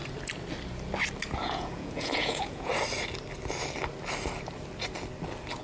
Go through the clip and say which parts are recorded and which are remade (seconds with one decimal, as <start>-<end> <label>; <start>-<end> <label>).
0.0-1.4 recorded; 1.4-2.7 remade; 2.7-5.6 recorded